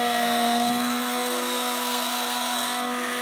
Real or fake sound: fake